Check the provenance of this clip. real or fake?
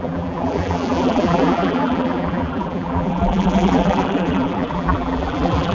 fake